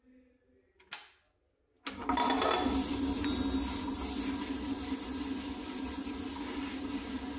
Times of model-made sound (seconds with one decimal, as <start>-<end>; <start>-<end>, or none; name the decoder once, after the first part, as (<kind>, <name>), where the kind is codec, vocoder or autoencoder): none

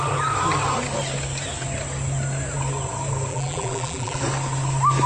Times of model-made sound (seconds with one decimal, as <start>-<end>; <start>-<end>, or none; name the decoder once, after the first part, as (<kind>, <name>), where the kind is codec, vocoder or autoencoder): 3.3-4.2 (vocoder, BigVGAN v2)

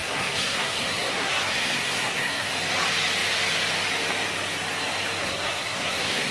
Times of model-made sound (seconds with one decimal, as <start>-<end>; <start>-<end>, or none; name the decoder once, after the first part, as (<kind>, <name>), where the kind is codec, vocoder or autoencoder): 0.0-2.5 (codec, SNAC); 5.2-6.3

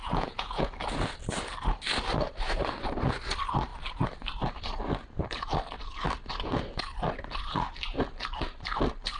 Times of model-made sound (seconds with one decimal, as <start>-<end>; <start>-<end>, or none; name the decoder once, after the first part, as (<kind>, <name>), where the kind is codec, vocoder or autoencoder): 0.0-0.7 (vocoder, Vocos)

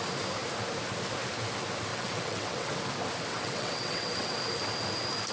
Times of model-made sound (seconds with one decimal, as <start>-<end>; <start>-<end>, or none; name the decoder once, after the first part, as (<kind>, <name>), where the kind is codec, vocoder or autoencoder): 1.9-2.7 (vocoder, WaveNeXt); 3.3-4.4

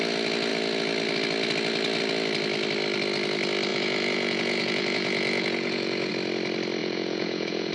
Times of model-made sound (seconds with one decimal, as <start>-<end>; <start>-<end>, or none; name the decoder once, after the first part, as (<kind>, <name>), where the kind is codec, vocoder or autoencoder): 3.7-6.1 (vocoder, Vocos); 6.8-7.7

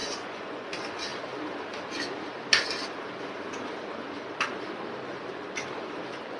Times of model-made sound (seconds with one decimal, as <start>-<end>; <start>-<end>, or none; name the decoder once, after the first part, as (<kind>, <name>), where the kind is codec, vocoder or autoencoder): 0.0-0.7 (vocoder, Vocos)

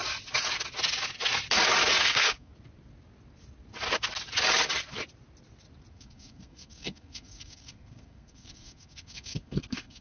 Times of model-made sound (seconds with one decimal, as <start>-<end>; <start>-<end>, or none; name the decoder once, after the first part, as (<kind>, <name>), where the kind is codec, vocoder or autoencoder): 2.0-2.5 (codec, SNAC); 5.9-10.0